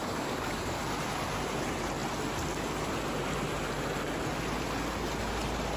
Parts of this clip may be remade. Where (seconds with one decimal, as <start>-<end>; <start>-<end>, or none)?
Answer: 0.0-0.8